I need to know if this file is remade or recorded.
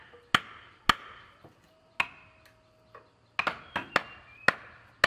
recorded